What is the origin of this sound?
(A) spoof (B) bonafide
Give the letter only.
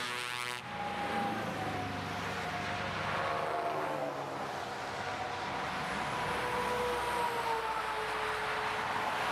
B